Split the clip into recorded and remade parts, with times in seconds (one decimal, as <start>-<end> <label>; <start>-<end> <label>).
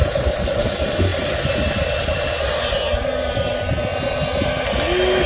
0.0-5.3 recorded